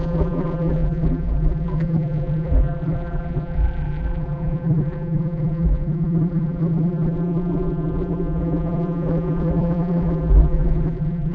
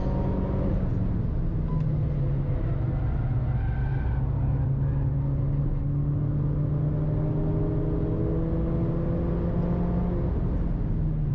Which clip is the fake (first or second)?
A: first